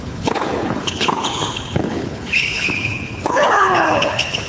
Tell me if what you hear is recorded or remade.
remade